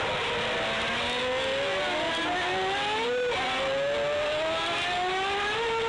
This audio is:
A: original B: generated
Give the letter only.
A